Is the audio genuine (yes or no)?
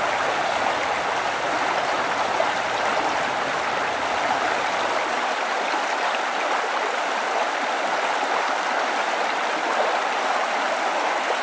yes